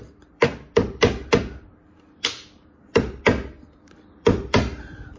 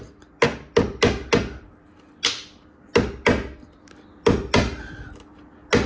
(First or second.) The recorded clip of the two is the second